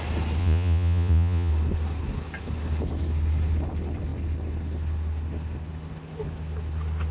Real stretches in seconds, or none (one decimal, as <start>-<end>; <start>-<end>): 0.0-0.4; 1.5-7.1